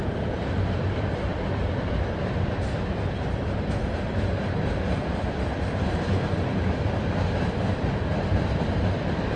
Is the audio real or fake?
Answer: fake